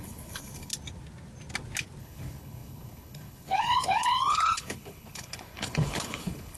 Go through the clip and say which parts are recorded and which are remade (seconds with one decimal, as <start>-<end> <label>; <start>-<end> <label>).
0.0-0.7 remade; 0.7-2.0 recorded; 2.0-6.6 remade